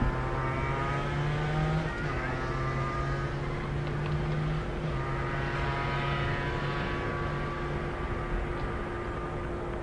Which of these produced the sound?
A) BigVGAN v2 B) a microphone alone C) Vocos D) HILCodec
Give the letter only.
B